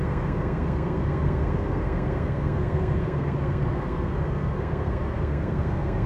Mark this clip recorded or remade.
remade